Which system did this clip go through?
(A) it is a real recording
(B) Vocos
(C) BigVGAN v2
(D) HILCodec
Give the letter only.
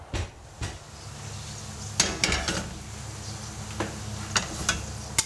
A